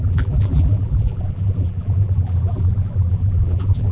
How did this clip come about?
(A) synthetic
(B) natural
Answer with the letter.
A